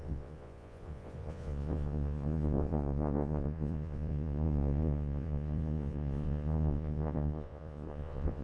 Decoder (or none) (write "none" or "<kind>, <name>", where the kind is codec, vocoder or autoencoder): vocoder, Vocos